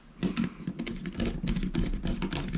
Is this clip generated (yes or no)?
no